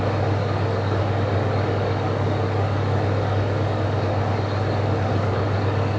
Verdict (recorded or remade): remade